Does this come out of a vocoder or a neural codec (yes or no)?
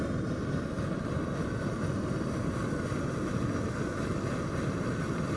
no